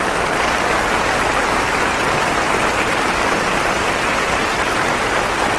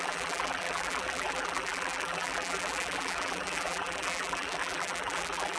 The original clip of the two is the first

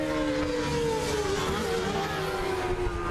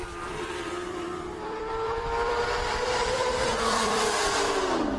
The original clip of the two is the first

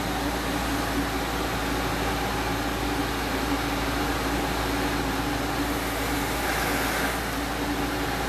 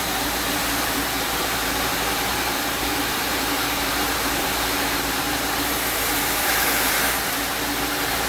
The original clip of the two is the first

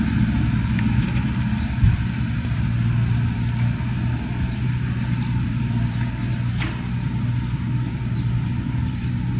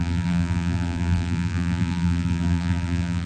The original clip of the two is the first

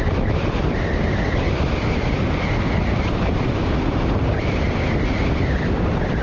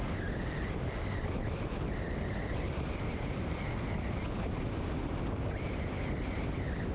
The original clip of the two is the second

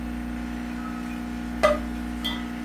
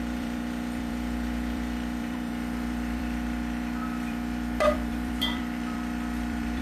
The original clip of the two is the first